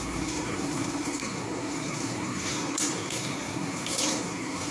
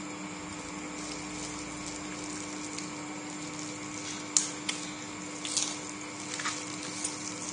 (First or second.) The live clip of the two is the second